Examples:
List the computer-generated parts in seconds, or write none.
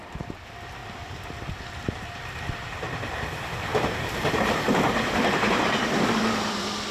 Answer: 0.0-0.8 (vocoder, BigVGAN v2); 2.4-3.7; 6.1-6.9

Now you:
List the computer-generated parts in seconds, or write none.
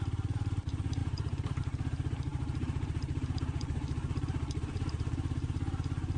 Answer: 0.0-6.2 (vocoder, BigVGAN v2)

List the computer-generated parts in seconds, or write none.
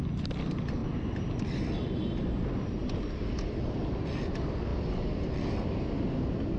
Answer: 0.8-1.7 (vocoder, BigVGAN v2)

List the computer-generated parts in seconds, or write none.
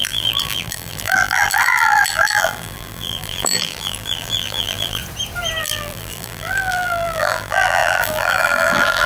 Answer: 0.0-5.0 (vocoder, BigVGAN v2); 5.6-9.1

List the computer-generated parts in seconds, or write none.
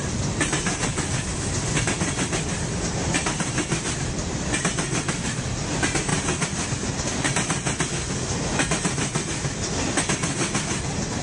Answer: 0.9-3.9 (vocoder, BigVGAN v2)